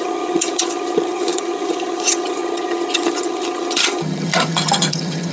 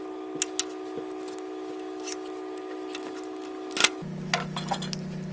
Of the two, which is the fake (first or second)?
first